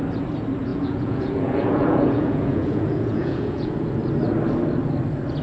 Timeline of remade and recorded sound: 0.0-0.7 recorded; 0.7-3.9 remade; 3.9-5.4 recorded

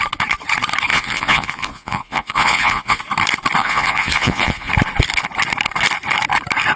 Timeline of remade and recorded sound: 0.0-0.9 recorded; 0.9-3.0 remade; 3.0-3.6 recorded; 3.6-4.7 remade; 4.7-6.8 recorded

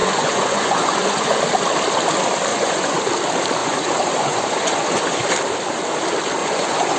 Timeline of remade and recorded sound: 0.0-1.4 remade; 1.4-2.5 recorded; 2.5-3.1 remade; 3.1-3.6 recorded; 3.6-5.3 remade; 5.3-6.4 recorded; 6.4-7.0 remade

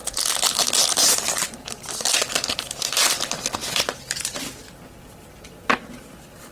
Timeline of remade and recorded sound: 0.0-6.5 recorded

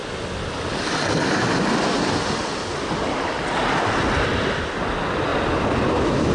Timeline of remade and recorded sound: 0.0-6.3 recorded

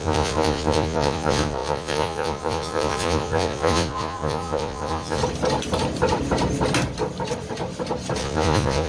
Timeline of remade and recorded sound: 0.0-5.2 remade; 5.2-8.2 recorded; 8.2-8.9 remade

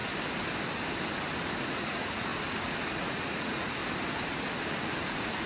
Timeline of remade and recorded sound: 0.0-1.6 recorded; 1.6-2.3 remade; 2.3-3.0 recorded; 3.0-3.8 remade; 3.8-5.1 recorded; 5.1-5.5 remade